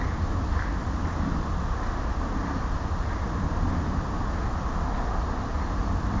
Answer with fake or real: real